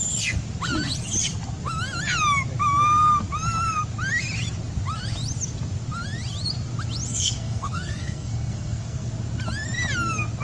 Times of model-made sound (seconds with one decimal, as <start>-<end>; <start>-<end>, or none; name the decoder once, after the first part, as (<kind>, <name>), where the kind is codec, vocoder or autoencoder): 7.1-9.1 (codec, SNAC)